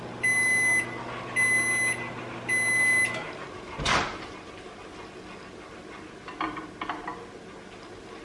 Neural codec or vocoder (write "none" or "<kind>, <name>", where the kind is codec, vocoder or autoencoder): none